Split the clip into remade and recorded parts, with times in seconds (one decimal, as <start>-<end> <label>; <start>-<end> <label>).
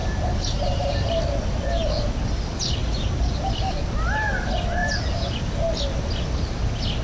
0.0-1.2 remade; 1.2-2.8 recorded; 2.8-3.6 remade; 3.6-4.8 recorded; 4.8-5.4 remade; 5.4-7.0 recorded